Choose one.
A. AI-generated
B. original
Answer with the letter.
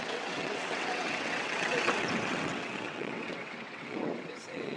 A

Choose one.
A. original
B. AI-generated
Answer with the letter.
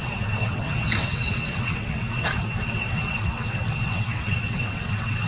B